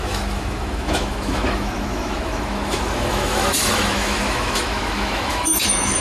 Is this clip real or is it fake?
fake